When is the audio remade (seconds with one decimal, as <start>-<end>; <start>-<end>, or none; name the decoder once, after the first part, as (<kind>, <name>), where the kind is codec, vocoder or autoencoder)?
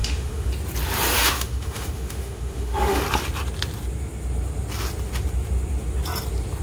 0.0-0.5 (autoencoder, DAC-VAE); 1.1-3.0